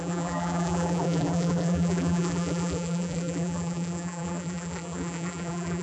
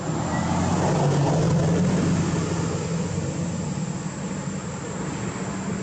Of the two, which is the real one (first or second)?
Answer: second